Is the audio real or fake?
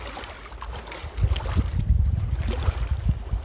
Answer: real